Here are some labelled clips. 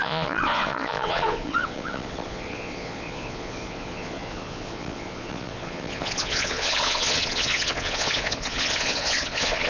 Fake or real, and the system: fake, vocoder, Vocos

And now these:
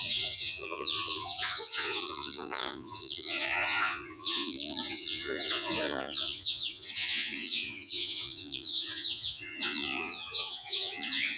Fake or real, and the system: fake, vocoder, Vocos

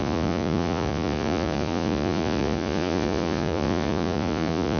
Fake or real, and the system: fake, vocoder, Vocos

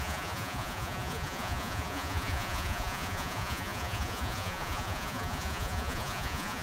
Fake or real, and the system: fake, vocoder, Vocos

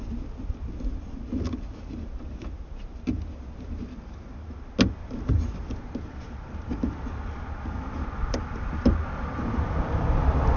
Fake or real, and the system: real